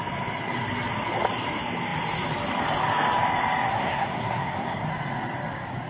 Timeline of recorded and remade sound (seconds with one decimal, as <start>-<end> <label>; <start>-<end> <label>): 0.0-3.7 recorded; 3.7-4.9 remade; 4.9-5.9 recorded

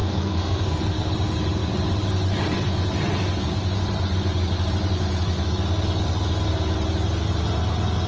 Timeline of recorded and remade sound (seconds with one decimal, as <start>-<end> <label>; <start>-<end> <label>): 0.0-1.1 remade; 1.1-8.1 recorded

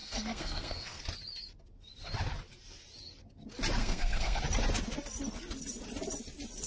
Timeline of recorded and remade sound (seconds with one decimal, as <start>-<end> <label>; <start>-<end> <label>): 0.0-1.0 remade; 1.0-3.8 recorded; 3.8-4.4 remade; 4.4-6.7 recorded